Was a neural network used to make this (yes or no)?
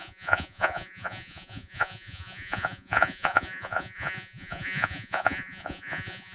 yes